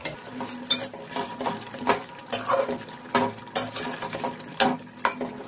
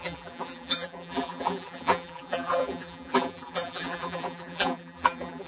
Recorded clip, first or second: first